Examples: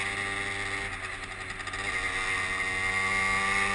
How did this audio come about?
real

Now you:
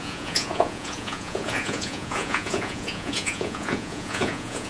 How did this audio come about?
fake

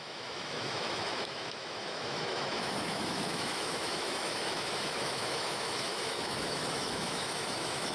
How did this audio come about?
fake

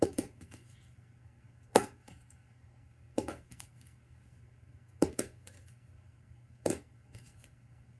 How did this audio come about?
fake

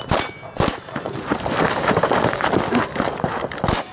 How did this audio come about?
real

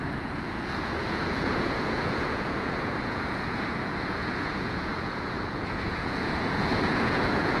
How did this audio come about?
fake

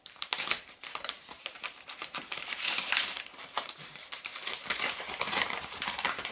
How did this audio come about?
fake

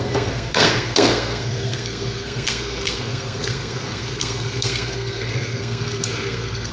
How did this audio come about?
fake